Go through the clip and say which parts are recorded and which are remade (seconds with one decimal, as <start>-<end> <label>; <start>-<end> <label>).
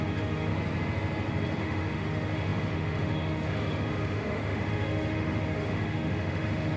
0.0-0.5 remade; 0.5-1.6 recorded; 1.6-6.8 remade